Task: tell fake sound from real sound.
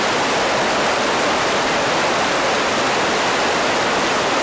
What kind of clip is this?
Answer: real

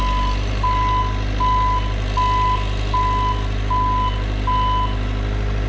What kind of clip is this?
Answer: real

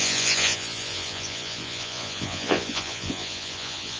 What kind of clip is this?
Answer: fake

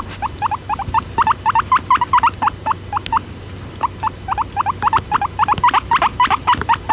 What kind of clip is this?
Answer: real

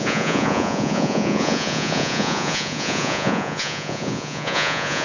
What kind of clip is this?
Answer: fake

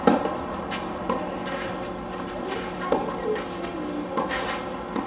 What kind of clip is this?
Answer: real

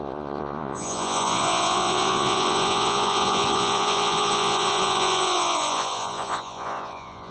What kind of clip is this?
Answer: fake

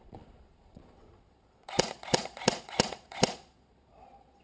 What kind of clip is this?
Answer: fake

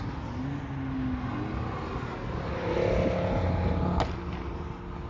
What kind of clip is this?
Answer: real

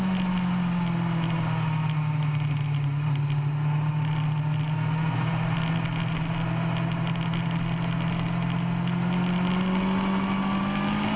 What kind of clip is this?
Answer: real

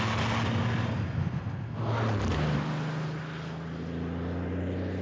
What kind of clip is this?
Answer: real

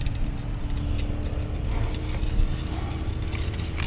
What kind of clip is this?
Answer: real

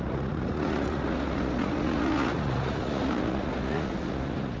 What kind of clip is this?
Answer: fake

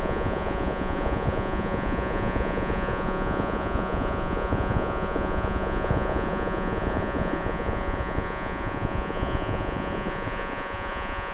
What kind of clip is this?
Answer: fake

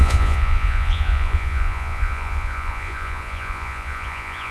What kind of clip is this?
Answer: fake